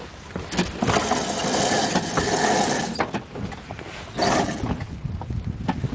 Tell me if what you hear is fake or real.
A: real